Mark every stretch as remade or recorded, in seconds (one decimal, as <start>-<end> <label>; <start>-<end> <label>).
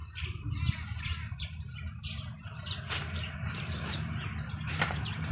0.0-0.7 recorded; 0.7-5.3 remade